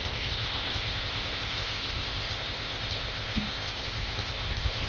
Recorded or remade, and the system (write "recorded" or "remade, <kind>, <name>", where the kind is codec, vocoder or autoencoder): remade, codec, ZipCodec